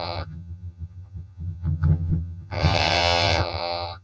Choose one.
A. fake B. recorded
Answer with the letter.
A